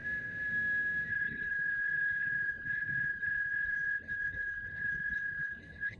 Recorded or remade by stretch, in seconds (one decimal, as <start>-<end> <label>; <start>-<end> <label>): 0.0-1.1 recorded; 1.1-6.0 remade